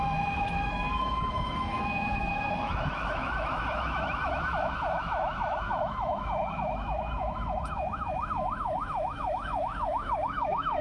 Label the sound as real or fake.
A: fake